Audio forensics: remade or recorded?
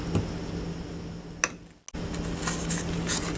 recorded